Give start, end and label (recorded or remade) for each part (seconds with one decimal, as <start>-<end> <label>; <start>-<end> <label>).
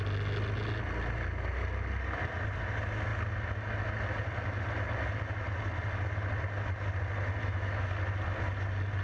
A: 0.0-7.4 recorded; 7.4-7.9 remade; 7.9-9.0 recorded